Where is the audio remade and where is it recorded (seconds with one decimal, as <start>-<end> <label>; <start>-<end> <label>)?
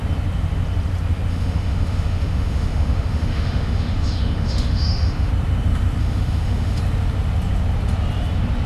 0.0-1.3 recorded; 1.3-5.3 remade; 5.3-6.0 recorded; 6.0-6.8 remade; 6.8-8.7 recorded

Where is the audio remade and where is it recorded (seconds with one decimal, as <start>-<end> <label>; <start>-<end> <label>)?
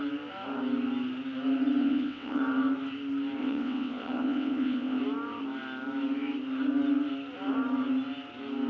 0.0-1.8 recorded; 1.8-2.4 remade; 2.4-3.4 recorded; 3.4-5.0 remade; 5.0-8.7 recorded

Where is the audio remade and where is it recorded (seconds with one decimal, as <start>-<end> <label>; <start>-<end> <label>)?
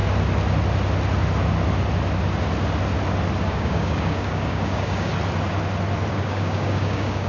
0.0-3.5 recorded; 3.5-5.1 remade; 5.1-6.1 recorded; 6.1-7.3 remade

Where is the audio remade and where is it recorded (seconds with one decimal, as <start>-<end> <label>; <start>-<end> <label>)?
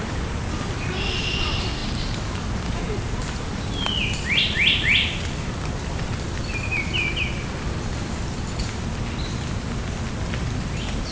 0.0-11.1 recorded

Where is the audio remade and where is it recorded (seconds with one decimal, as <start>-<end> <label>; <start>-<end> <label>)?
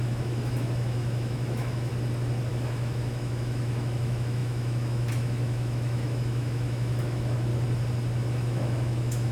0.0-1.9 remade; 1.9-2.5 recorded; 2.5-7.5 remade; 7.5-8.2 recorded; 8.2-9.3 remade